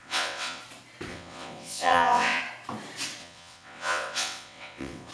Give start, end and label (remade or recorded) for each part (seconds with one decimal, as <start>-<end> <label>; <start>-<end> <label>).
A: 0.0-0.6 remade; 0.6-1.1 recorded; 1.1-2.4 remade; 2.4-3.2 recorded; 3.2-5.1 remade